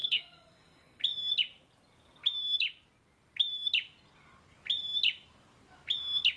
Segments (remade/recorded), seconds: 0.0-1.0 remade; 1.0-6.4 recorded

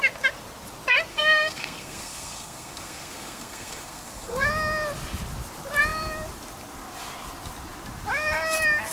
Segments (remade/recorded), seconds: 0.0-1.1 recorded; 1.1-4.5 remade; 4.5-8.9 recorded

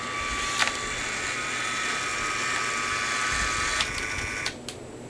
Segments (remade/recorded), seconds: 0.0-5.1 recorded

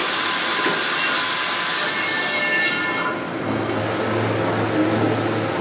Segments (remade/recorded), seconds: 0.0-3.3 recorded; 3.3-3.8 remade; 3.8-5.6 recorded

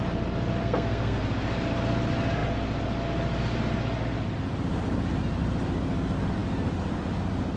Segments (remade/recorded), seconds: 0.0-0.6 recorded; 0.6-1.2 remade; 1.2-7.6 recorded

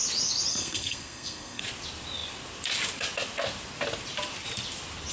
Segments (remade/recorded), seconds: 0.0-0.5 recorded; 0.5-1.6 remade; 1.6-5.1 recorded

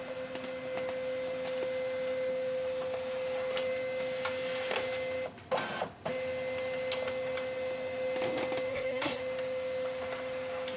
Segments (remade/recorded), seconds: 0.0-8.7 recorded; 8.7-9.2 remade; 9.2-10.8 recorded

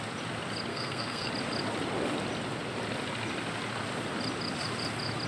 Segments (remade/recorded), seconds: 0.0-0.7 recorded; 0.7-1.3 remade; 1.3-5.3 recorded